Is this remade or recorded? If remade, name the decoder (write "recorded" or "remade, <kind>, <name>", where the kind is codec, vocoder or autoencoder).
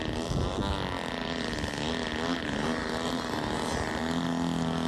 recorded